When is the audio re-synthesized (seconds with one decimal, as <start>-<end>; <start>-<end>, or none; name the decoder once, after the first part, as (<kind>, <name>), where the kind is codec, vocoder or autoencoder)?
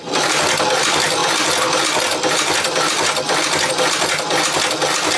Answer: none